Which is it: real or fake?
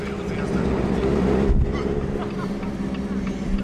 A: real